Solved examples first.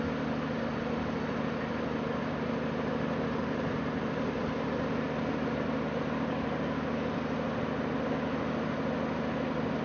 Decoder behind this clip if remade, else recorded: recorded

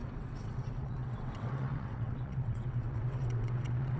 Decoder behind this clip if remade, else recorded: remade, vocoder, WaveNeXt